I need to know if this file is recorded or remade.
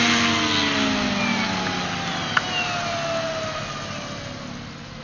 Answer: recorded